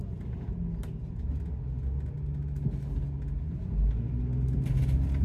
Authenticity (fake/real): real